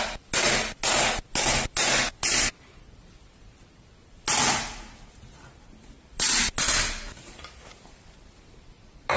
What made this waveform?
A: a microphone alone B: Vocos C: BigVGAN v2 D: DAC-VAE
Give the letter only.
A